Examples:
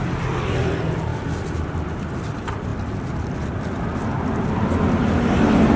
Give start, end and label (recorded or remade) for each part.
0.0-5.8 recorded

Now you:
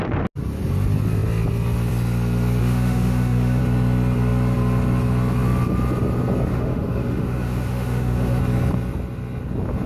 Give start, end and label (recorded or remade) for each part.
0.0-2.6 recorded; 2.6-3.6 remade; 3.6-6.5 recorded; 6.5-8.4 remade; 8.4-9.9 recorded

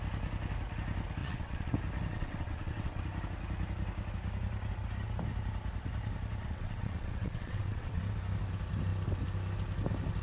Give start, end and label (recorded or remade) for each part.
0.0-1.2 recorded; 1.2-1.7 remade; 1.7-2.1 recorded; 2.1-3.0 remade; 3.0-6.4 recorded; 6.4-8.0 remade; 8.0-10.2 recorded

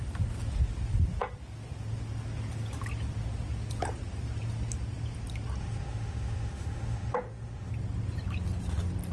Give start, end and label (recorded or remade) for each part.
0.0-5.6 recorded; 5.6-7.7 remade; 7.7-9.1 recorded

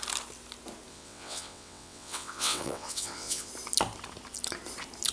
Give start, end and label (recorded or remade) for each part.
0.0-0.9 recorded; 0.9-3.5 remade; 3.5-5.1 recorded

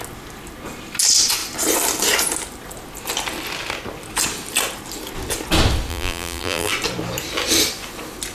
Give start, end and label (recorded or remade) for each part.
0.0-5.9 recorded; 5.9-6.7 remade; 6.7-8.3 recorded